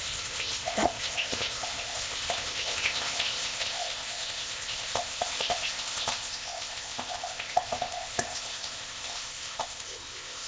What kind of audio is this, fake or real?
fake